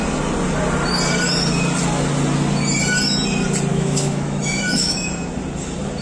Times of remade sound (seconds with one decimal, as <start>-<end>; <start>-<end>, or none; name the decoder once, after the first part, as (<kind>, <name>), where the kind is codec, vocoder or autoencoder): 3.7-5.1 (autoencoder, DAC-VAE)